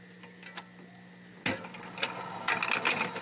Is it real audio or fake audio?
real